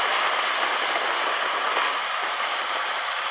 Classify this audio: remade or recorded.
recorded